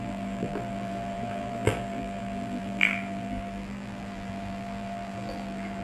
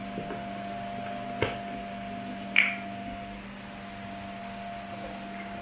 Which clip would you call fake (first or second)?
first